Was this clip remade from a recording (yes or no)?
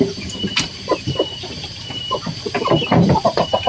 yes